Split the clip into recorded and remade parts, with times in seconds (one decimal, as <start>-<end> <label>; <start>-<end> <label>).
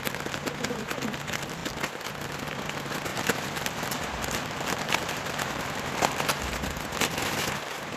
0.0-3.1 recorded; 3.1-5.6 remade; 5.6-8.0 recorded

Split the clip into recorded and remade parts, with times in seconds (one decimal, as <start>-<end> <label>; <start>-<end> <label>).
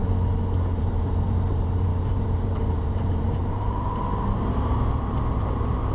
0.0-0.8 recorded; 0.8-5.9 remade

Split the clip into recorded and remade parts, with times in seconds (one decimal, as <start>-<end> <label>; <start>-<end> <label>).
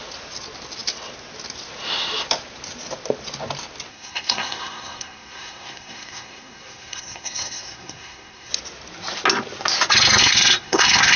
0.0-3.9 recorded; 3.9-8.5 remade; 8.5-10.2 recorded; 10.2-11.2 remade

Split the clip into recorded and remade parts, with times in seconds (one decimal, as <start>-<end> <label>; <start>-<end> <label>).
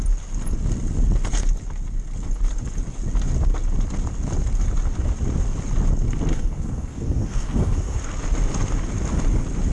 0.0-6.3 recorded; 6.3-8.0 remade; 8.0-9.7 recorded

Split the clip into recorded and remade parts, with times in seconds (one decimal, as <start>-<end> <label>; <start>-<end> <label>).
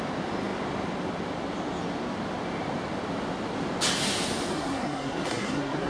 0.0-4.5 recorded; 4.5-5.9 remade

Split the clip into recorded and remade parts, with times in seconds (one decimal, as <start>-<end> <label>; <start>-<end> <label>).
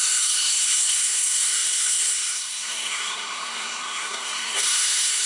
0.0-5.3 remade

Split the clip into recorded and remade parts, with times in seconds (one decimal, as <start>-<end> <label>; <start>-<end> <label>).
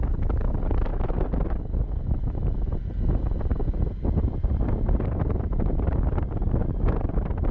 0.0-7.5 recorded